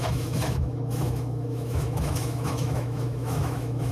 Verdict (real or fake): fake